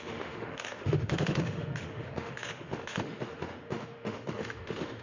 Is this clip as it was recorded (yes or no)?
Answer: no